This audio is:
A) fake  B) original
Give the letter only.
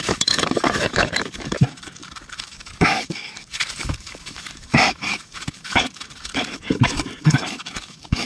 A